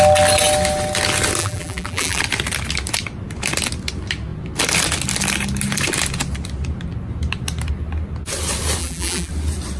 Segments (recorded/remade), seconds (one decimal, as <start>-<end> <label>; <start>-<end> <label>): 0.0-1.4 recorded; 1.4-2.2 remade; 2.2-8.8 recorded; 8.8-9.3 remade; 9.3-9.8 recorded